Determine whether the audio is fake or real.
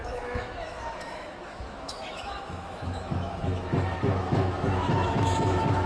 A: fake